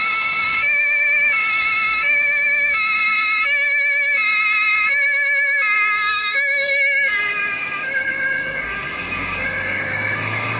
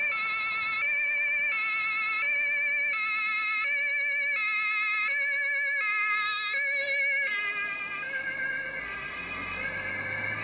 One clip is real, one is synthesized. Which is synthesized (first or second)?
first